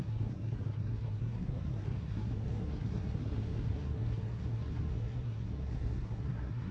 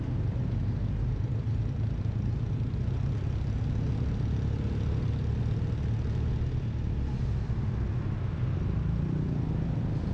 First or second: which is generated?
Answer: first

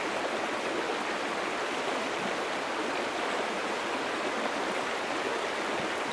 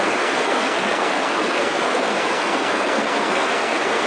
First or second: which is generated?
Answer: second